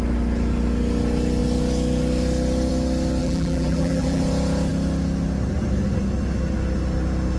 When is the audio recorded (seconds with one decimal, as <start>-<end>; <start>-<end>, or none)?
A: 0.0-3.2; 4.2-7.4